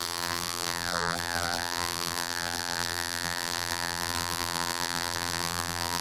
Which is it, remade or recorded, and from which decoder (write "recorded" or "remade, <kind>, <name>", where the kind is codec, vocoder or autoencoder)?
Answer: remade, vocoder, BigVGAN v2